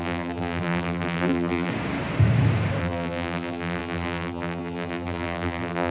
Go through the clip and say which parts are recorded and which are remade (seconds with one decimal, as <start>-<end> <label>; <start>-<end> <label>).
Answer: 0.0-1.7 remade; 1.7-2.8 recorded; 2.8-5.9 remade